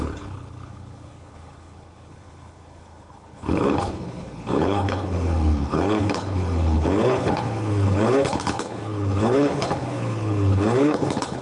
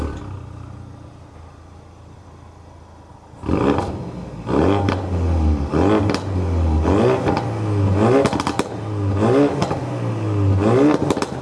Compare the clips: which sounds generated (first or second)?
first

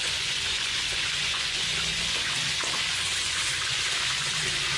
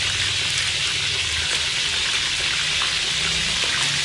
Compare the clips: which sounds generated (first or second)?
first